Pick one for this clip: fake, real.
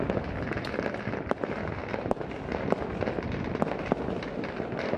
real